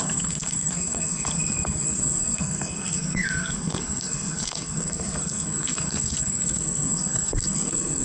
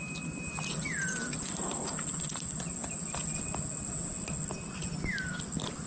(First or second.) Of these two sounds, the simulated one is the first